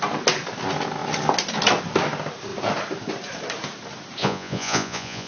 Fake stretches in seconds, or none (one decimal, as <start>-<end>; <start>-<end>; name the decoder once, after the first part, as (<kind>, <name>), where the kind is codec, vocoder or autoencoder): 4.2-5.3 (vocoder, Vocos)